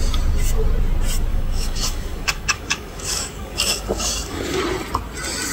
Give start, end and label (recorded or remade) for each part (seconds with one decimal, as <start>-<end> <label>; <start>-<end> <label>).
0.0-1.3 recorded; 1.3-4.6 remade; 4.6-5.5 recorded